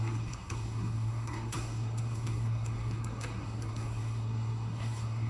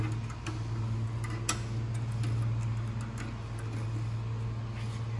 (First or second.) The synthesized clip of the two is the first